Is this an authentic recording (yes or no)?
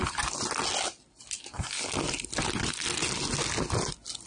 yes